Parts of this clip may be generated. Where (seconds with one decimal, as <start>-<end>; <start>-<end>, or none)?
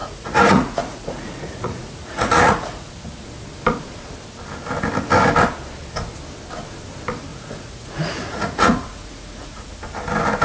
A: 0.0-2.9; 7.3-9.7